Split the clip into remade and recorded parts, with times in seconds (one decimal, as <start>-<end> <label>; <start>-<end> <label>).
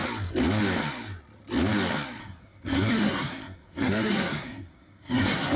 0.0-2.2 recorded; 2.2-5.6 remade